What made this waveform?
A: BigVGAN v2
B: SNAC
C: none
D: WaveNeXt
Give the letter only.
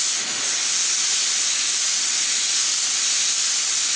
C